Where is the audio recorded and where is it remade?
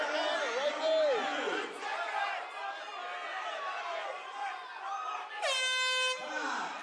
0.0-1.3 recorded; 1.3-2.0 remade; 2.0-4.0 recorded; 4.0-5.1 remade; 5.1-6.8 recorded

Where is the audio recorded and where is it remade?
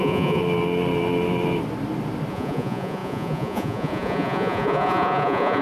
0.0-0.4 remade; 0.4-2.3 recorded; 2.3-5.6 remade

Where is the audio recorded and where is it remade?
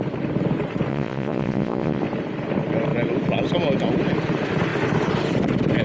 0.0-0.9 recorded; 0.9-2.0 remade; 2.0-5.8 recorded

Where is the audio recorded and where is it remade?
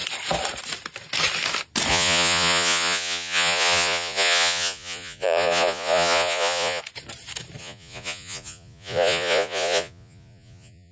0.0-1.9 recorded; 1.9-6.8 remade; 6.8-7.6 recorded; 7.6-10.9 remade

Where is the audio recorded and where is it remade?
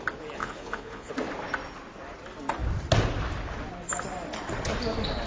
0.0-0.4 recorded; 0.4-1.1 remade; 1.1-5.3 recorded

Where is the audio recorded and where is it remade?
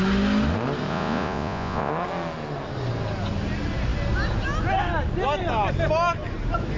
0.0-0.9 recorded; 0.9-1.9 remade; 1.9-6.8 recorded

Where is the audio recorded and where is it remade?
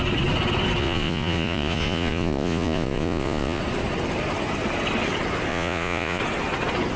0.0-0.8 recorded; 0.8-3.6 remade; 3.6-5.5 recorded; 5.5-6.2 remade; 6.2-7.0 recorded